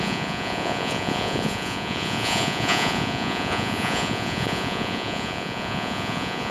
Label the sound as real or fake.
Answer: fake